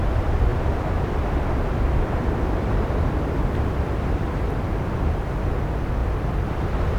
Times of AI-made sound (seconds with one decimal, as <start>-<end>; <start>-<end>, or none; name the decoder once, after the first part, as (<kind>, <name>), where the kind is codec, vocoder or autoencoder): 0.5-4.5 (vocoder, BigVGAN v2); 6.0-7.0